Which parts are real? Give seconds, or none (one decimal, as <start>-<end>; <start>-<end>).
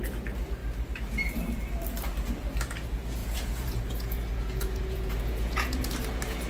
0.0-3.2; 5.9-6.5